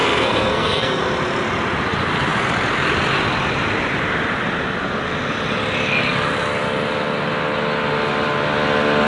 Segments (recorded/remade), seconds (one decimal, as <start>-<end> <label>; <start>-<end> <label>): 0.0-1.0 remade; 1.0-9.1 recorded